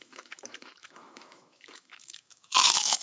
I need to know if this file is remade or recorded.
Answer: remade